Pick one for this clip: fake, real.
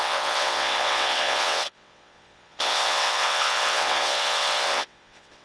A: fake